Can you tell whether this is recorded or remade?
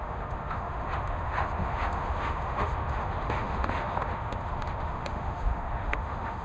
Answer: remade